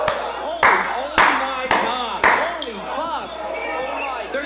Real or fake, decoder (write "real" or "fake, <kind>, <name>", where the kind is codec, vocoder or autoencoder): real